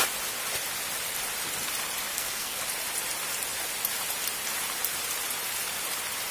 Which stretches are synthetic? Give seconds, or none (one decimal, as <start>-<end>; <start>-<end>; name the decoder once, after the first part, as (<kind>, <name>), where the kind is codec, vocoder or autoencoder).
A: 2.1-2.6 (codec, SNAC)

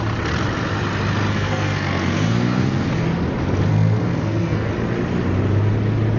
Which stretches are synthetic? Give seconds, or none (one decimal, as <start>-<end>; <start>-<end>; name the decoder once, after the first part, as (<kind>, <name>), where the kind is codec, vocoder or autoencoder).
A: 1.3-2.9 (codec, SNAC); 3.7-4.7

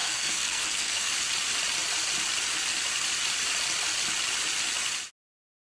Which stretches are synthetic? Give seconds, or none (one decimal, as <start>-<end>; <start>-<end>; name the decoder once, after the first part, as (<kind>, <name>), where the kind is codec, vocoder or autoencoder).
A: 0.0-1.1 (codec, SNAC)

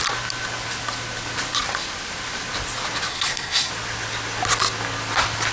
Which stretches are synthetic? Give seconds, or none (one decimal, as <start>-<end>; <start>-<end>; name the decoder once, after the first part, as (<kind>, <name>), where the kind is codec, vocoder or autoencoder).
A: 3.1-3.7 (codec, SNAC)